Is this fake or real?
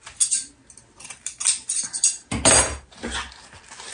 real